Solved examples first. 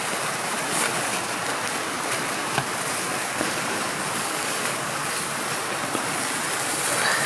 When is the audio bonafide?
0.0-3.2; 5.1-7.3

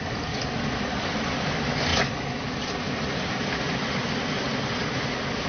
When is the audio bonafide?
0.0-5.5

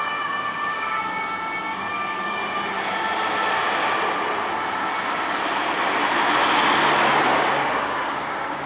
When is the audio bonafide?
2.4-7.4

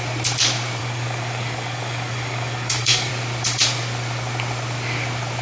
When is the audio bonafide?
0.0-0.8; 3.1-5.4

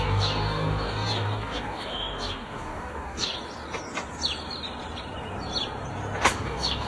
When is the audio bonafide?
3.3-6.3